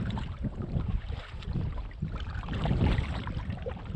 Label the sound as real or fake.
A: fake